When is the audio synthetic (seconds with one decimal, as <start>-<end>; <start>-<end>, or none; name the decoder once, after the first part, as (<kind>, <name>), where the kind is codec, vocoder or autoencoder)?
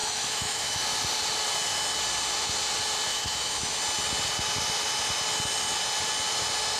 0.0-0.8 (autoencoder, DAC-VAE); 3.1-3.8